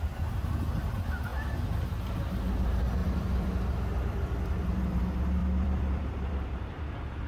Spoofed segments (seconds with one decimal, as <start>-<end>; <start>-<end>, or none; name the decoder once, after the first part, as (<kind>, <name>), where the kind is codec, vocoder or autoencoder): 3.0-5.0 (vocoder, BigVGAN v2); 5.4-6.8